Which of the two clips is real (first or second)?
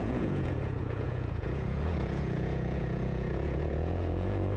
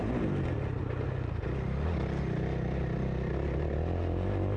second